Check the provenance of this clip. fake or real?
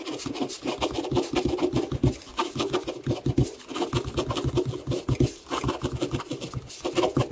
real